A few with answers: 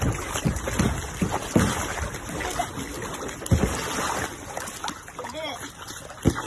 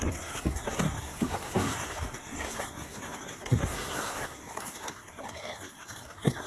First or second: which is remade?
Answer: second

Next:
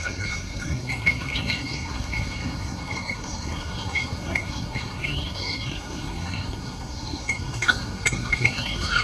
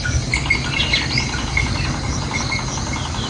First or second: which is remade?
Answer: first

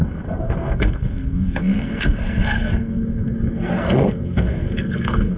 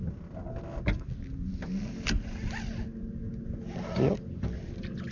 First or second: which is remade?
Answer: first